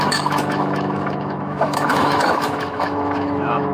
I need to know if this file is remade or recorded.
remade